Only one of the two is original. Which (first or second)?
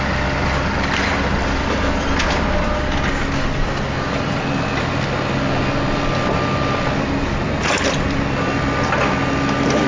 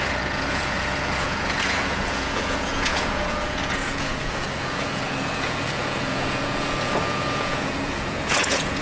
first